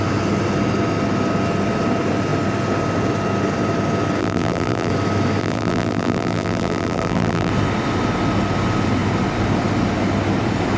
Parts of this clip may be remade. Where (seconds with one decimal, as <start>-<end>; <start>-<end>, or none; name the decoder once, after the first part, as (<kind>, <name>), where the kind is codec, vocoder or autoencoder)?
4.2-4.9 (vocoder, BigVGAN v2); 5.4-7.5